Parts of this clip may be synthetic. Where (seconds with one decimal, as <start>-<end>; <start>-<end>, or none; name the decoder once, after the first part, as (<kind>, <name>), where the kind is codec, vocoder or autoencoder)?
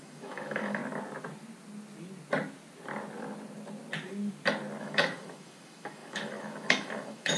0.0-0.8 (autoencoder, DAC-VAE); 4.8-7.4